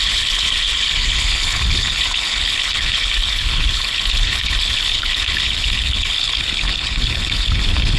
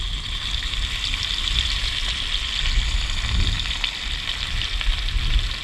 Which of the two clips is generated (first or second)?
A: first